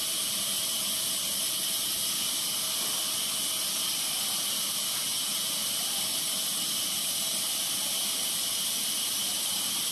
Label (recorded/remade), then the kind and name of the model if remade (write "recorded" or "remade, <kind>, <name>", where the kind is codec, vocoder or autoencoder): recorded